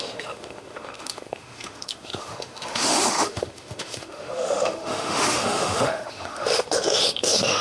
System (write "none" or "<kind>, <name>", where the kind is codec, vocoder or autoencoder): autoencoder, DAC-VAE